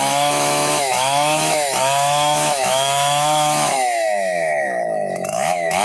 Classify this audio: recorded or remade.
remade